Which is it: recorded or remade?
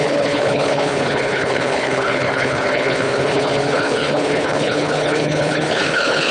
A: remade